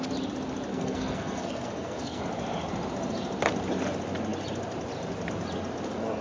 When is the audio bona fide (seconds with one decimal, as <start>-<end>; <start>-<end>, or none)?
0.0-0.7; 2.2-6.2